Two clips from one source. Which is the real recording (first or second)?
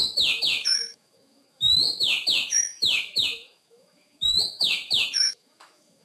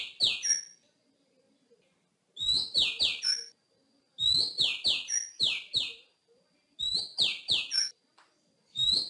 second